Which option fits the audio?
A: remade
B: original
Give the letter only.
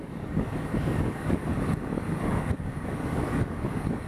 A